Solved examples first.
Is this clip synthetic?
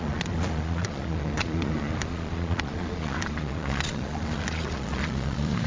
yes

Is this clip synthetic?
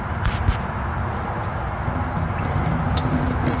no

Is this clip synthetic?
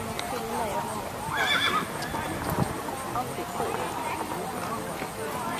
no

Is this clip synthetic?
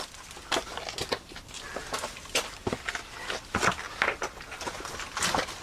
no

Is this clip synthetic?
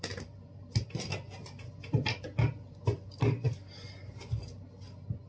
no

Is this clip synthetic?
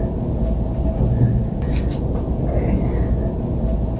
no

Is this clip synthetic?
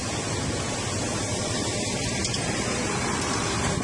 yes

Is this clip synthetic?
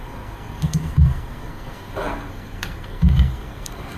yes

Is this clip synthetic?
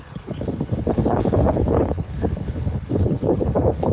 yes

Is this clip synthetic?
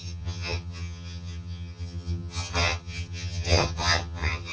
yes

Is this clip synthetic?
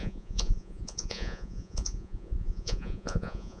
yes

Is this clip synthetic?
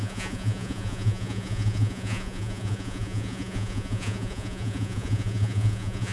yes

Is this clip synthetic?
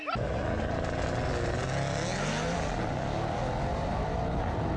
no